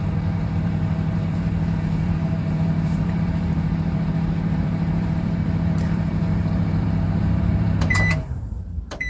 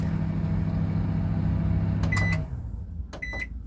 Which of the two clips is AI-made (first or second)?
first